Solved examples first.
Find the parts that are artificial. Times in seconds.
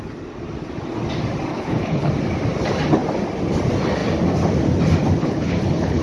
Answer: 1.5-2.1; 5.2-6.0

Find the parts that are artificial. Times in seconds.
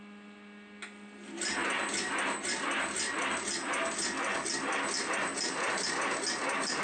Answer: none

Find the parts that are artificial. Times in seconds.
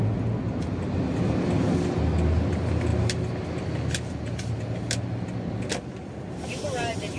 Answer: none